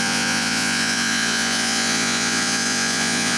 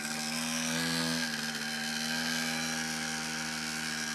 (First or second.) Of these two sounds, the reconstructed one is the first